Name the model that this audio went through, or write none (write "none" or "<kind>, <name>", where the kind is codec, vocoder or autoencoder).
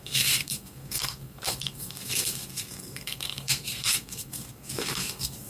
codec, SNAC